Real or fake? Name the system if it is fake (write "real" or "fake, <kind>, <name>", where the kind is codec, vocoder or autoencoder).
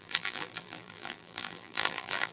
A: fake, vocoder, BigVGAN v2